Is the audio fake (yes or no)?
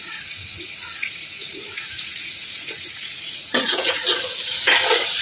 yes